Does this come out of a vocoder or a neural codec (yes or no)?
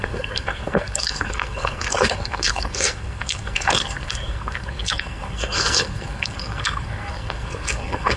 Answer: yes